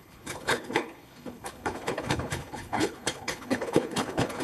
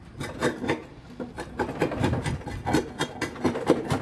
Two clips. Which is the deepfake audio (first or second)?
first